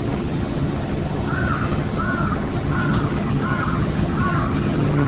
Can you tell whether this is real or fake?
fake